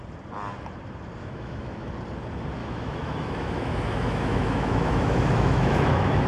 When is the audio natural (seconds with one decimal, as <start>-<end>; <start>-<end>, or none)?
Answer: 0.0-1.2; 1.9-2.6